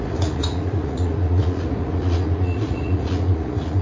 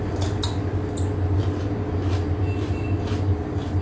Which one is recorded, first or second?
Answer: second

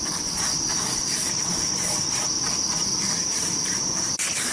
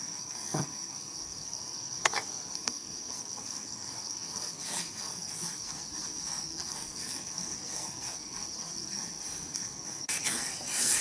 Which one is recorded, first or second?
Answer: first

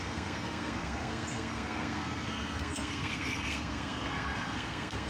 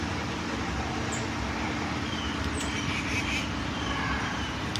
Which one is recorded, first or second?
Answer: second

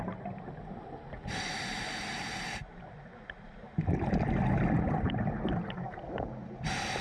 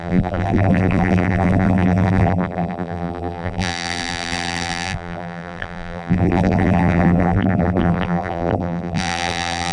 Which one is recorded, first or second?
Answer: first